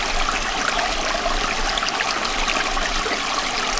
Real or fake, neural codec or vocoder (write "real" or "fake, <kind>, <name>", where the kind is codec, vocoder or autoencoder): real